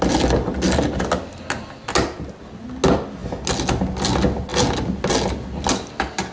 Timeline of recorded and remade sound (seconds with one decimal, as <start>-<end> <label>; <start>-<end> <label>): 0.0-6.3 recorded